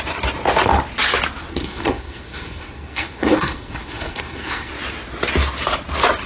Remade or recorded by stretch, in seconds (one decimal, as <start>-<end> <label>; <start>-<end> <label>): 0.0-1.5 recorded; 1.5-4.7 remade; 4.7-6.3 recorded